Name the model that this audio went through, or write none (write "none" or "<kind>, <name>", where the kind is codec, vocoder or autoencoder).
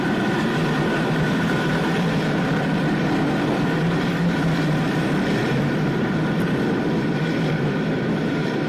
vocoder, BigVGAN v2